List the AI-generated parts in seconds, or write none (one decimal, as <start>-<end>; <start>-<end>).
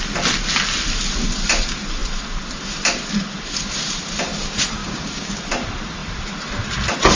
4.8-5.3